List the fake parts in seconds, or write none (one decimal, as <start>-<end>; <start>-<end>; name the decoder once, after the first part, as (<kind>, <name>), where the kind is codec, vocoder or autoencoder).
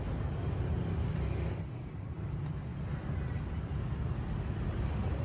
0.0-1.1 (vocoder, BigVGAN v2); 1.7-2.7; 4.8-5.2